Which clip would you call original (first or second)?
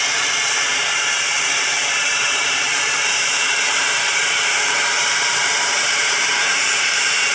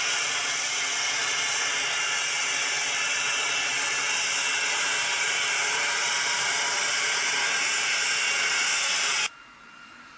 second